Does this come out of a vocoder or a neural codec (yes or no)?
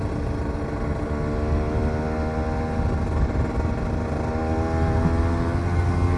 no